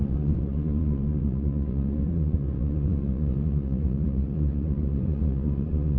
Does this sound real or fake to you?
fake